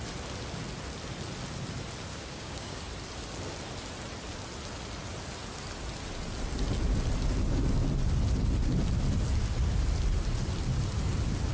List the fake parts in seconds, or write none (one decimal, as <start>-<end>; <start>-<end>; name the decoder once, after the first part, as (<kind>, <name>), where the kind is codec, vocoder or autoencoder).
2.1-2.8 (codec, DAC)

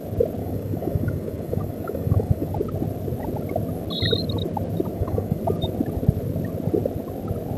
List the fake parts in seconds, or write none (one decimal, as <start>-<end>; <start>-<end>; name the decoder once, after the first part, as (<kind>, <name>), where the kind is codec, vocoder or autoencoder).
0.4-2.5 (codec, DAC); 4.9-5.4

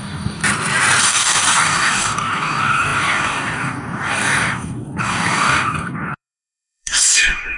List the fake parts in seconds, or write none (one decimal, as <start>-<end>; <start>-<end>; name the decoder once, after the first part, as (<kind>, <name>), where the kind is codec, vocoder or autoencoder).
0.0-0.4 (codec, DAC); 1.0-7.6

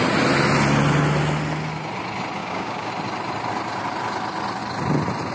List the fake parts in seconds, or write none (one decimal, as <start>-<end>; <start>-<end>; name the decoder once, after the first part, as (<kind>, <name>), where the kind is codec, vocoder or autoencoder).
2.4-2.9 (codec, DAC)

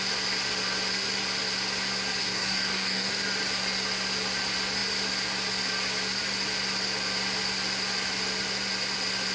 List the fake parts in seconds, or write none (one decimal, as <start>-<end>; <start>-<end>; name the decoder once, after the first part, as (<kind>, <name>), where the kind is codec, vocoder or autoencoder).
2.2-3.1 (codec, DAC)

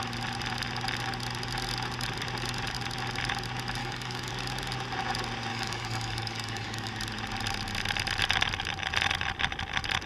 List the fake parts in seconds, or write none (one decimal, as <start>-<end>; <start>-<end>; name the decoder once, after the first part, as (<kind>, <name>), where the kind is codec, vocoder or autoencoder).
3.8-4.3 (codec, DAC); 5.5-6.9

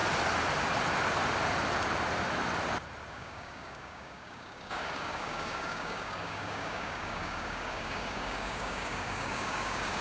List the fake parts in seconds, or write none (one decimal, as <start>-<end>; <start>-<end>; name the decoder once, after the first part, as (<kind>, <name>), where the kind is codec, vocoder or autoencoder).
3.1-10.0 (codec, DAC)